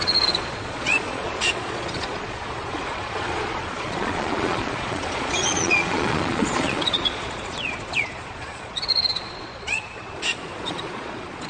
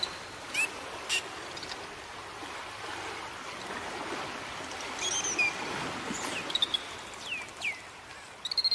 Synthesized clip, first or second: first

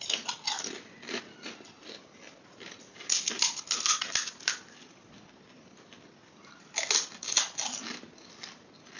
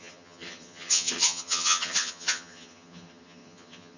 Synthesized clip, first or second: second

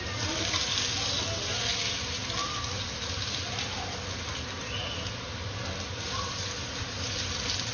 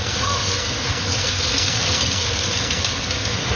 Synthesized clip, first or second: second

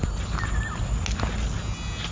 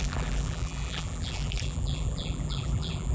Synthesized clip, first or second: second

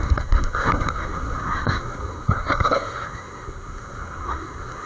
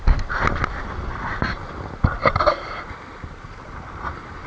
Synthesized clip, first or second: first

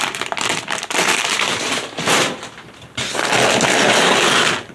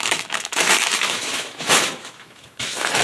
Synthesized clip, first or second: second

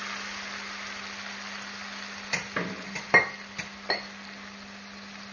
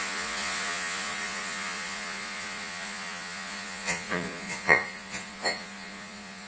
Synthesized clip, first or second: second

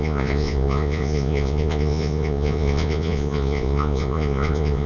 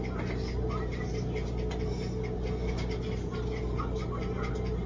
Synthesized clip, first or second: first